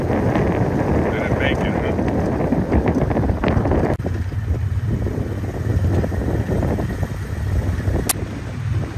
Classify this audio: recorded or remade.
recorded